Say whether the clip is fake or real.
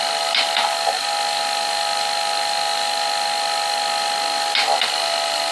real